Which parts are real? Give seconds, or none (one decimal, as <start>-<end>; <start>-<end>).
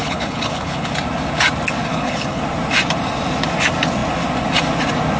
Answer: 0.9-1.9; 2.4-5.2